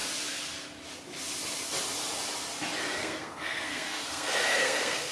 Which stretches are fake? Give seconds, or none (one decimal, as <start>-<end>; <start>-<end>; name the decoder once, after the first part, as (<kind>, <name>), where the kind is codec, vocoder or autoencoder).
3.0-5.1 (codec, SNAC)